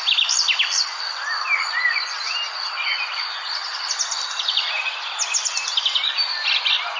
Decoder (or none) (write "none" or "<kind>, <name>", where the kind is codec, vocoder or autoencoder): none